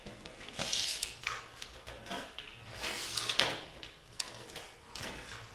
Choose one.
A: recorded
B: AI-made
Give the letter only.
B